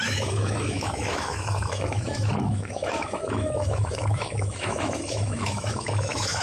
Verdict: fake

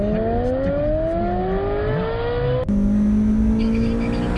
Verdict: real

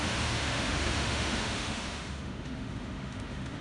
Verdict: fake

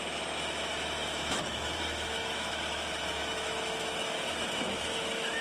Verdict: fake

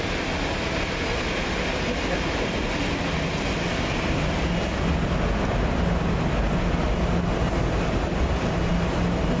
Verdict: real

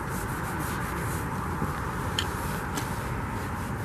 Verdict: real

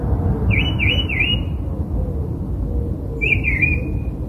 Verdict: real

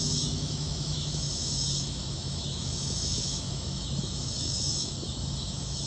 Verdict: fake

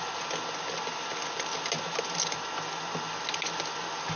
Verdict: real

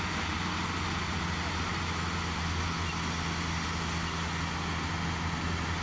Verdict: real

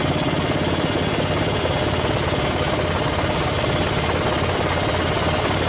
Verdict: real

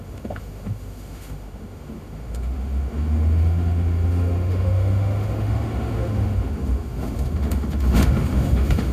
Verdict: fake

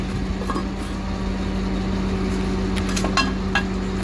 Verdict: real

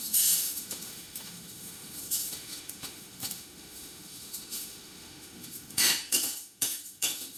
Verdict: fake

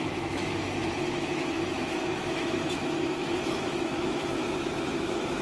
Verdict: fake